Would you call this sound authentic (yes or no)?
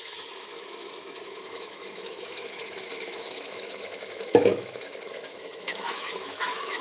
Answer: no